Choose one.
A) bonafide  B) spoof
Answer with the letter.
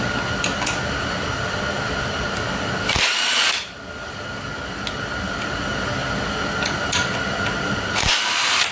A